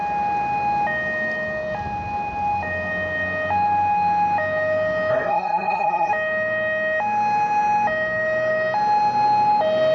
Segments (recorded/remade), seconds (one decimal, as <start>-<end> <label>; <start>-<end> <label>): 0.0-5.1 recorded; 5.1-6.1 remade; 6.1-9.9 recorded